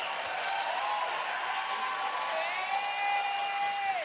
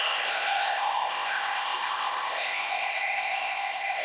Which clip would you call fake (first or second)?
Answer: second